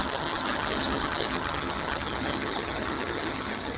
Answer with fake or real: fake